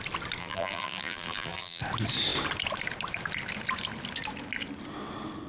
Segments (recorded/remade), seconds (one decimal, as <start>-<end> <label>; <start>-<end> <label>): 0.0-0.4 recorded; 0.4-1.8 remade; 1.8-5.5 recorded